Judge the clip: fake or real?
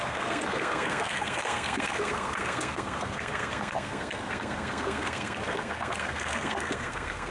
fake